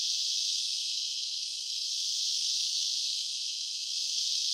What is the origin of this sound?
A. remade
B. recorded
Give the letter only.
A